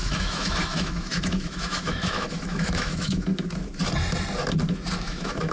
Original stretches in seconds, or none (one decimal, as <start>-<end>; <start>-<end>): 3.3-5.0